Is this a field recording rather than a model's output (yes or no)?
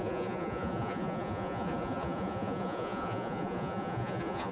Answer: no